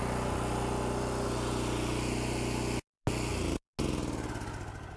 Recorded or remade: recorded